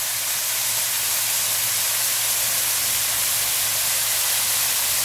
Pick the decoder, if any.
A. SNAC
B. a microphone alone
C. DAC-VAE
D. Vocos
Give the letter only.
B